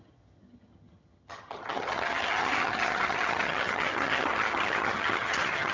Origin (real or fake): fake